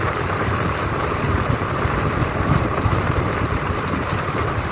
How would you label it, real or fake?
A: fake